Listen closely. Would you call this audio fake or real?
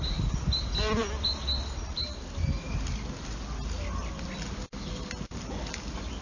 real